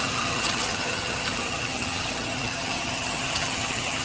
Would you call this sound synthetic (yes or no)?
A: yes